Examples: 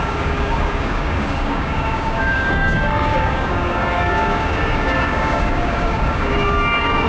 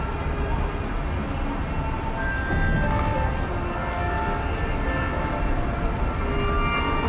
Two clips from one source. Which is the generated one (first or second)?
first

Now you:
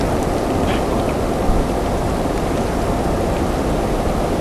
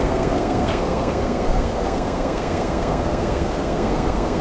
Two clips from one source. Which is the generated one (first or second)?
second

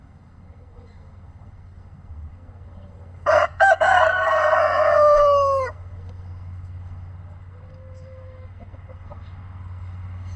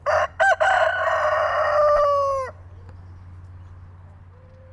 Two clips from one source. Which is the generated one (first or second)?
first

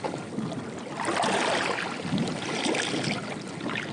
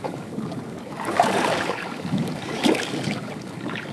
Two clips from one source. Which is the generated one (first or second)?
second